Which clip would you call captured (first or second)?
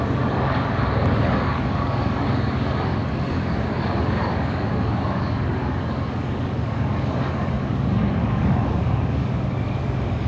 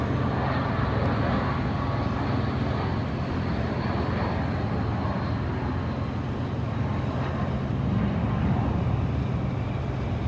second